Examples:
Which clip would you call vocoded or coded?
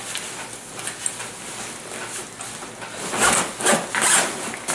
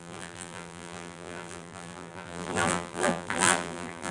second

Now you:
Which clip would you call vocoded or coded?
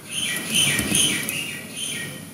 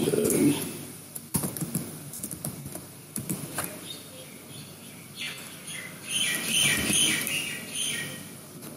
first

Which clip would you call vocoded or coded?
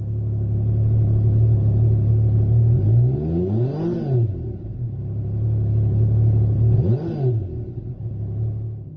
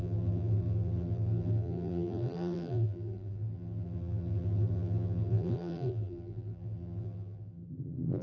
second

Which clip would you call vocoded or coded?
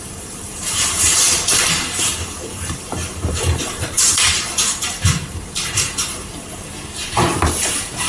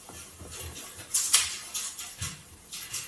first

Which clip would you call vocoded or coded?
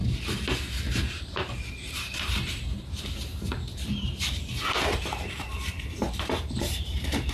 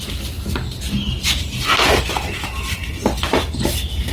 first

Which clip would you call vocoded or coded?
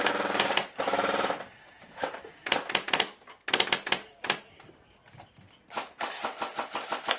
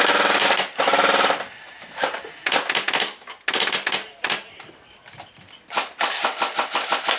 first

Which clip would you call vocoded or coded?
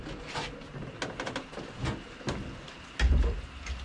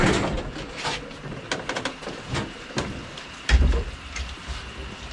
second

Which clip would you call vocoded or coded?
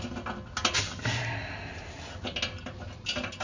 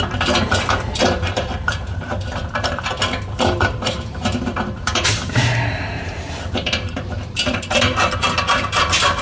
second